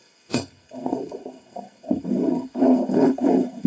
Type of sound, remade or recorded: remade